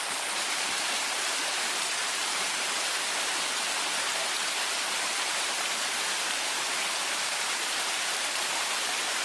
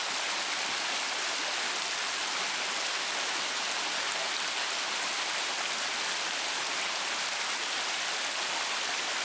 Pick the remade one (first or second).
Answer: first